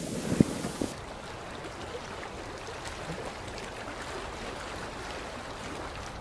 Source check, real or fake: real